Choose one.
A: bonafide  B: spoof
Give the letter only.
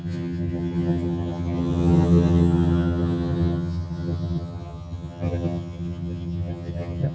B